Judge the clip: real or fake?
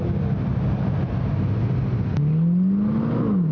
real